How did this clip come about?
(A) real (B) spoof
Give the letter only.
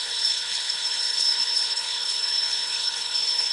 B